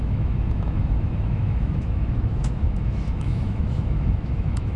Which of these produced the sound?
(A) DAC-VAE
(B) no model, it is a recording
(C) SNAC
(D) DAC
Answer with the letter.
A